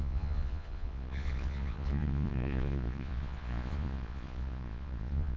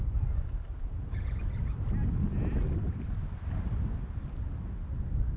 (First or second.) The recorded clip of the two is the second